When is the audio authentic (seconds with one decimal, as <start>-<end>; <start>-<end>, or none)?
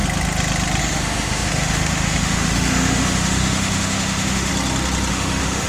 0.0-0.8; 4.5-5.1